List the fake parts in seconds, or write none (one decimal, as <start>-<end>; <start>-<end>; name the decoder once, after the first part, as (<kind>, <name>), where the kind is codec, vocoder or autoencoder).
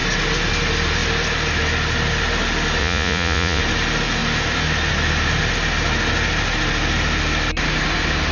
2.8-3.6 (vocoder, Vocos)